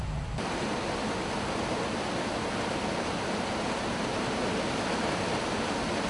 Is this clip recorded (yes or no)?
yes